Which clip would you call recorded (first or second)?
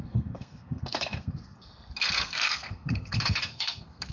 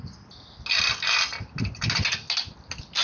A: second